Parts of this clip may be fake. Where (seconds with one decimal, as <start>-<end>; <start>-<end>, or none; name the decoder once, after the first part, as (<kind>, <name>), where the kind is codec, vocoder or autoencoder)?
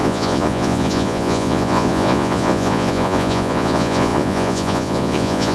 0.0-5.5 (vocoder, Vocos)